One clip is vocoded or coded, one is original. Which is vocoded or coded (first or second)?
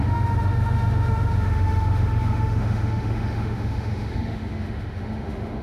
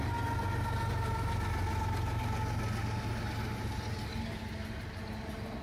first